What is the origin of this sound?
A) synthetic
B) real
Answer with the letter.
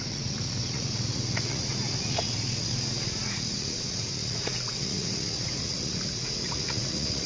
A